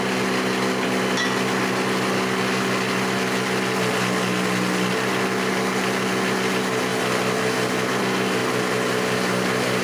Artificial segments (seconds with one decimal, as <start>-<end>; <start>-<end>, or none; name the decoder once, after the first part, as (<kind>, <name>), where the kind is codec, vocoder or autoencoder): none